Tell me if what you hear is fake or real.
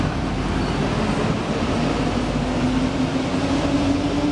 real